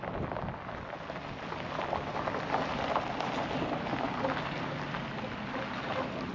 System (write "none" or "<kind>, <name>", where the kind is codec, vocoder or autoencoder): none